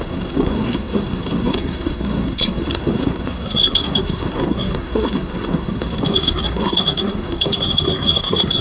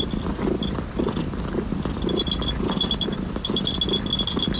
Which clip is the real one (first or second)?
second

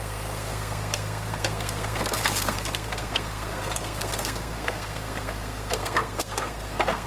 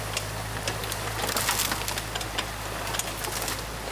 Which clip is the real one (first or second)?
second